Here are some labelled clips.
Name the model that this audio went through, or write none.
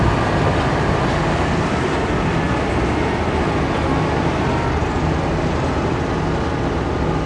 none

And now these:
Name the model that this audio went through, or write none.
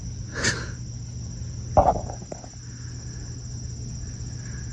none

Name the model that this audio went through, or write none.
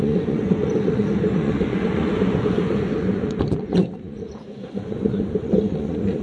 vocoder, Vocos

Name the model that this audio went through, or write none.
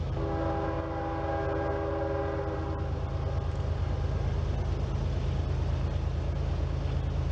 none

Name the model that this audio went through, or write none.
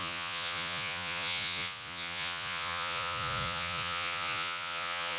vocoder, Vocos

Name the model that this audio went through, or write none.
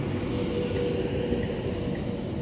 none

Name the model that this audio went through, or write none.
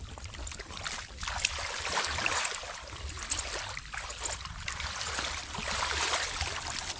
none